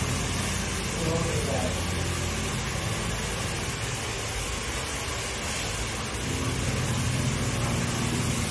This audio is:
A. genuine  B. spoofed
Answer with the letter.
A